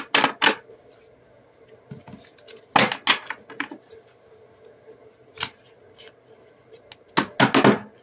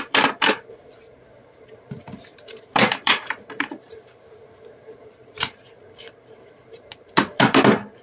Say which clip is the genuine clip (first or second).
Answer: first